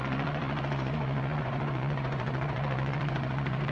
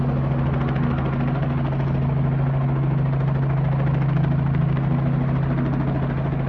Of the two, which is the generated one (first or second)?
first